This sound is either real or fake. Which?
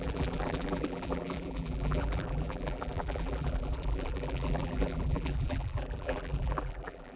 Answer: fake